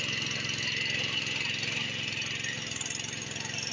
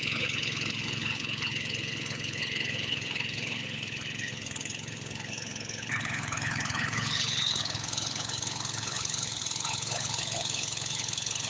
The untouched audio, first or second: first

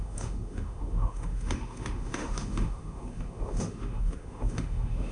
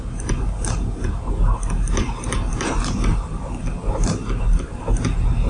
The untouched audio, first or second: second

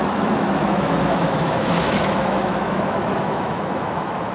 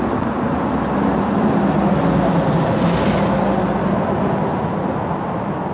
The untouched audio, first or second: second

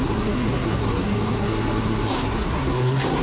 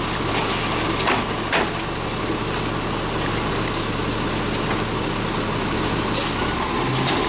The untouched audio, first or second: second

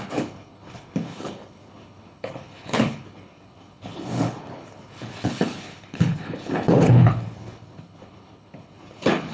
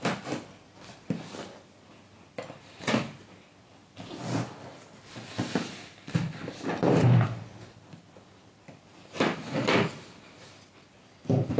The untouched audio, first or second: second